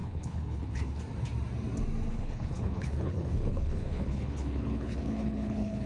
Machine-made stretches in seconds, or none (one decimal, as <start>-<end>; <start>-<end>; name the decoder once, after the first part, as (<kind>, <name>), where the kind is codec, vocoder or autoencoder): 0.0-1.0 (codec, HILCodec); 2.1-5.9